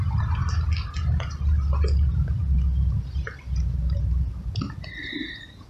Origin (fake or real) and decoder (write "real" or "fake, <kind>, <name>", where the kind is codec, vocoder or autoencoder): real